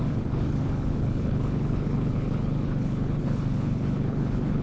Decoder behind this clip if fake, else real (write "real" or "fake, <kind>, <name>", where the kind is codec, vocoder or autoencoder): fake, codec, HILCodec